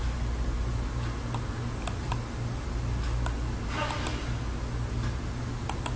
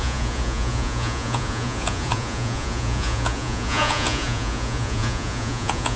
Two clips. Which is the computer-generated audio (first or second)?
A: second